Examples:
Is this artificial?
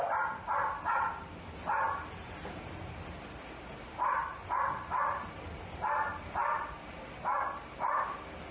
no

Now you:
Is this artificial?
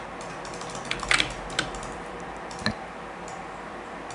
no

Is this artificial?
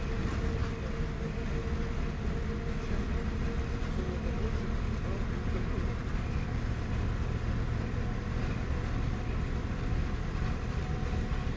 no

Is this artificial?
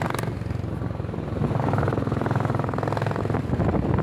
no